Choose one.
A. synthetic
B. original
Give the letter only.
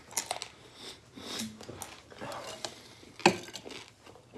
B